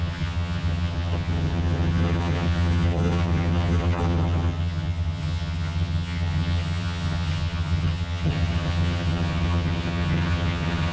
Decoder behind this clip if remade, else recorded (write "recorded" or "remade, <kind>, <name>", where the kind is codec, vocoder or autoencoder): remade, vocoder, HiFi-GAN